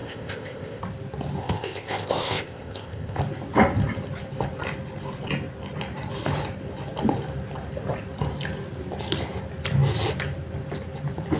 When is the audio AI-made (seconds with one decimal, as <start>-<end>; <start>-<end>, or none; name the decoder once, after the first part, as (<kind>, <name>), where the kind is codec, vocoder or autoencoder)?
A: 0.0-0.8 (codec, ZipCodec); 1.4-3.2